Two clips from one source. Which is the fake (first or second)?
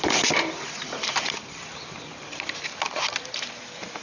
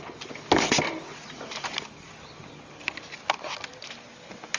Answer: first